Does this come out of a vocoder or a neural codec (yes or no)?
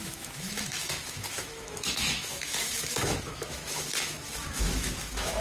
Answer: yes